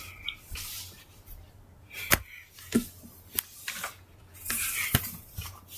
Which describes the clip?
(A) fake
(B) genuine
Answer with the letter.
B